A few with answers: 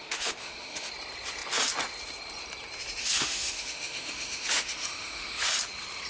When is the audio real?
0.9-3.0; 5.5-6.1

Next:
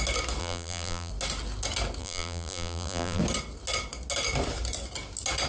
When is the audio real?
0.0-0.4; 1.1-2.0; 3.2-5.5

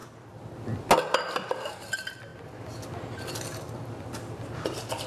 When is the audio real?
0.0-5.1